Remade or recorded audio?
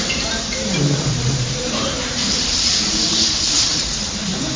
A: remade